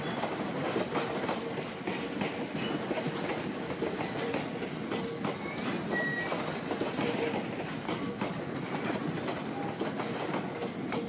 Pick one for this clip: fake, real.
real